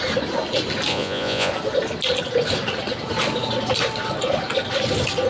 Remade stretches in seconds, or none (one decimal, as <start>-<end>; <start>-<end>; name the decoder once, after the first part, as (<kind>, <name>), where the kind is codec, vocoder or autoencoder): 0.9-1.5 (vocoder, Vocos)